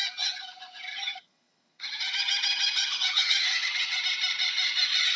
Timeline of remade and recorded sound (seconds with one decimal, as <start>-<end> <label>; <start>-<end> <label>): 0.0-0.9 recorded; 0.9-4.0 remade; 4.0-5.2 recorded